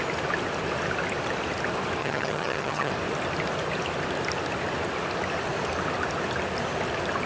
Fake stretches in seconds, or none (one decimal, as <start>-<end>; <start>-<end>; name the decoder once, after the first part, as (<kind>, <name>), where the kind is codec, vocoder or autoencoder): 2.0-2.9 (vocoder, HiFi-GAN)